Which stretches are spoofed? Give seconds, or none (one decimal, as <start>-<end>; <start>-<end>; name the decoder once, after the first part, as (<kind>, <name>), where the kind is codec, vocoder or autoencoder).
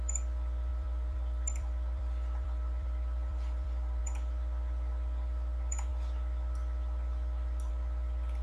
0.7-4.0 (vocoder, BigVGAN v2)